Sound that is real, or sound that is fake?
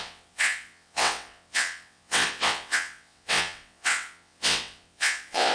fake